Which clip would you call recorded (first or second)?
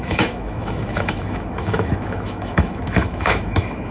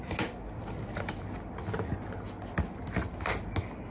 second